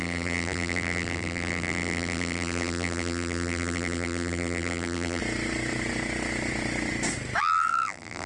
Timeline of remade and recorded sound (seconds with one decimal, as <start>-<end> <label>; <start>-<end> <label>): 0.0-5.2 remade; 5.2-7.4 recorded; 7.4-8.3 remade